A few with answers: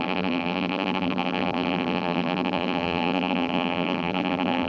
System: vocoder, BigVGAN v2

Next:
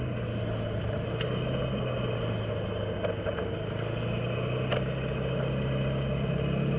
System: none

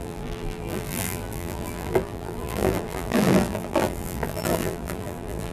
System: vocoder, BigVGAN v2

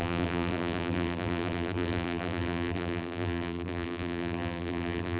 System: vocoder, BigVGAN v2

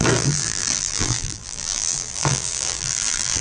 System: vocoder, BigVGAN v2